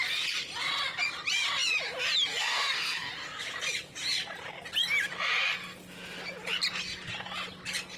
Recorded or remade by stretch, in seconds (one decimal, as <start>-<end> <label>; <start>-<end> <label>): 0.0-2.3 recorded; 2.3-3.1 remade; 3.1-8.0 recorded